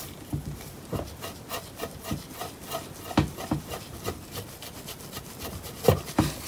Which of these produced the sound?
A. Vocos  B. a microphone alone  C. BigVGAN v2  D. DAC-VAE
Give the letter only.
B